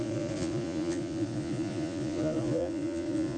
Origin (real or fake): fake